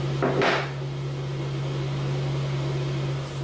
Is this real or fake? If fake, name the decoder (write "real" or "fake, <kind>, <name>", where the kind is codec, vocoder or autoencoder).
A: real